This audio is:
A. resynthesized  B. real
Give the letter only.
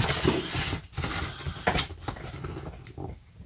B